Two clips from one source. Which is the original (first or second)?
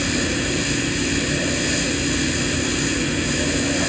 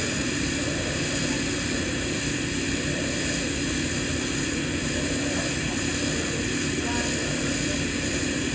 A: first